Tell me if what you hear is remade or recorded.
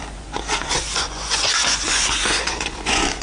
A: remade